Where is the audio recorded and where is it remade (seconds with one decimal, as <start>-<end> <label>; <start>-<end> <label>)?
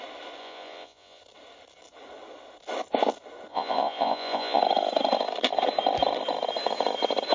0.0-0.4 recorded; 0.4-1.2 remade; 1.2-3.5 recorded; 3.5-4.6 remade; 4.6-7.3 recorded